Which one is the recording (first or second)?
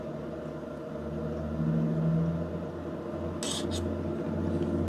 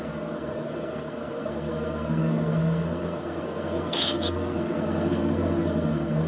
first